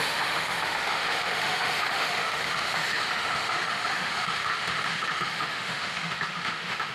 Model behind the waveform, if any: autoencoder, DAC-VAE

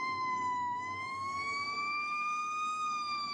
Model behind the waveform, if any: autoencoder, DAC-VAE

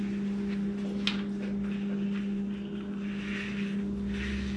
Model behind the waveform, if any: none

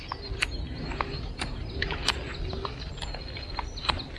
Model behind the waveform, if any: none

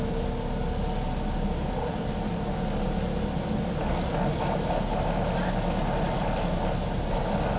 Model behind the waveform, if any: none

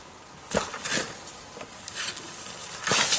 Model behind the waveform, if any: none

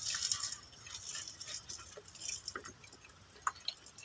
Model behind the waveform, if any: none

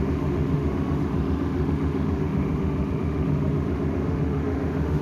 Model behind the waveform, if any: autoencoder, DAC-VAE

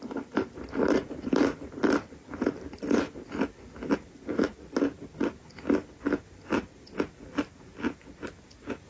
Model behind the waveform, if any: none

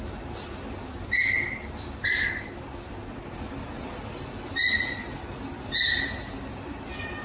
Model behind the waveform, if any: none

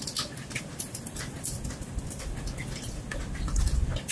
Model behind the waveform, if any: none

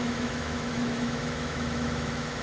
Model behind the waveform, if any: autoencoder, DAC-VAE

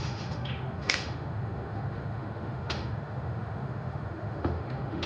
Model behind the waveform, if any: autoencoder, DAC-VAE